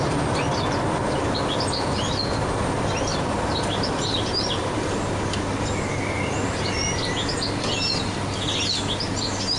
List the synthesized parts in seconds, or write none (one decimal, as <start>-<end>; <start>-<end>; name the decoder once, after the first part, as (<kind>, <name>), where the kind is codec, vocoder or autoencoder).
3.1-5.0 (vocoder, BigVGAN v2)